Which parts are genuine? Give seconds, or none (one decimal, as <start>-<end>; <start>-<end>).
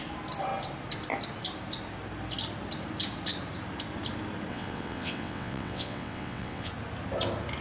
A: 0.0-4.5; 6.7-7.6